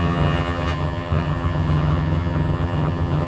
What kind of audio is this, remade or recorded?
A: remade